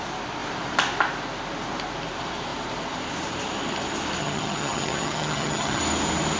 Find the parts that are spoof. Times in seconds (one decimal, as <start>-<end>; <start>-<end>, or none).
4.2-5.8